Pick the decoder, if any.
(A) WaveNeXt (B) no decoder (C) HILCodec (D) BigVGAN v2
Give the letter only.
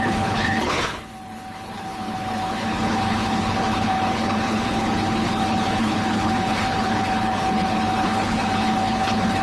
C